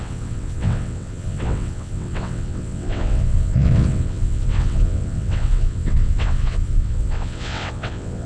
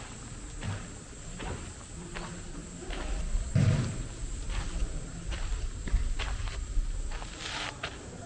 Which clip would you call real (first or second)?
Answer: second